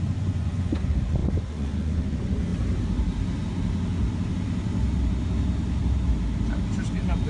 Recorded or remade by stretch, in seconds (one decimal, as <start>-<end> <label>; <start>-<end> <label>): 0.0-2.5 remade; 2.5-7.3 recorded